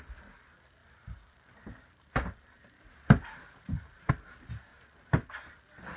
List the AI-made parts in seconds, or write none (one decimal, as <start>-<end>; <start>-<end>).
0.8-4.1